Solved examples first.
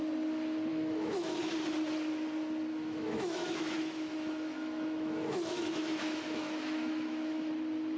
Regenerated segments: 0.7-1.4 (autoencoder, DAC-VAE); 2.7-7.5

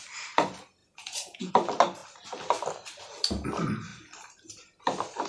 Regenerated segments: 0.8-1.5 (vocoder, Vocos)